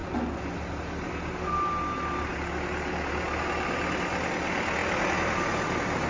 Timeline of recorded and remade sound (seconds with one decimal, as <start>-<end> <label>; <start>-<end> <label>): 0.0-6.1 recorded